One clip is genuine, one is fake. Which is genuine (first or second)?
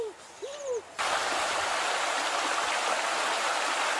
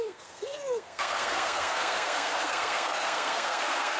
first